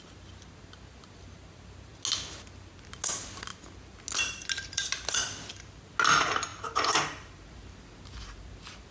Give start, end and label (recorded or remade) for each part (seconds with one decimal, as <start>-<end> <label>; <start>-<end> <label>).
0.0-8.9 recorded